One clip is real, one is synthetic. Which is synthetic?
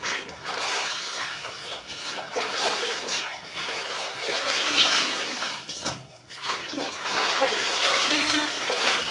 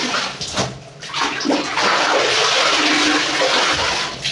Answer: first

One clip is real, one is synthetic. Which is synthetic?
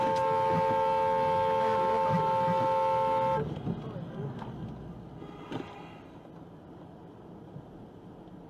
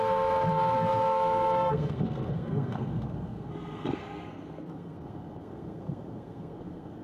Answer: second